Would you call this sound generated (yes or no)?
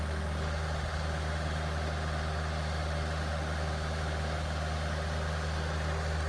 no